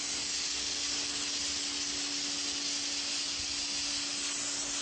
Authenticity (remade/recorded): recorded